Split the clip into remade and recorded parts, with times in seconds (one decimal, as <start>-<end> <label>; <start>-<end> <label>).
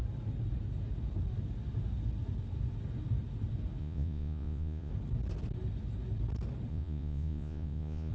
0.0-3.8 recorded; 3.8-4.9 remade; 4.9-6.7 recorded; 6.7-8.1 remade